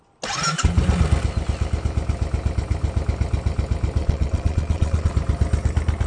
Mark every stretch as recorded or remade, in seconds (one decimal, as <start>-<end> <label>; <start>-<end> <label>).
0.0-4.0 recorded; 4.0-5.1 remade; 5.1-6.1 recorded